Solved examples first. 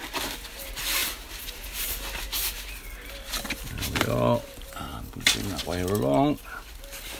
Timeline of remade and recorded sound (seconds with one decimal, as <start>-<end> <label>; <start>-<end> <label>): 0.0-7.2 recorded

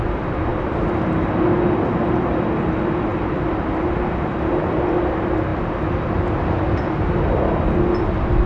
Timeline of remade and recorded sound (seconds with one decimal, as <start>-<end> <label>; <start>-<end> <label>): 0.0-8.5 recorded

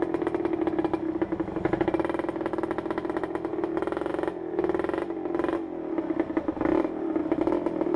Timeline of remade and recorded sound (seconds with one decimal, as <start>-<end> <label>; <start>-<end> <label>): 0.0-7.2 recorded; 7.2-8.0 remade